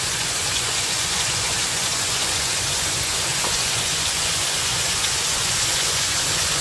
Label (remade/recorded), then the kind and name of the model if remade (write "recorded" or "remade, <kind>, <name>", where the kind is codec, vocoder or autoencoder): remade, vocoder, Vocos